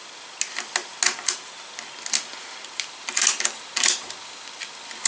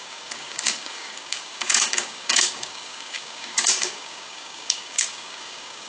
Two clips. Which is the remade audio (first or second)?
second